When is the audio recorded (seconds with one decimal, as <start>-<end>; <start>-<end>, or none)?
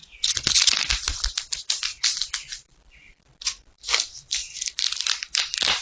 0.0-5.8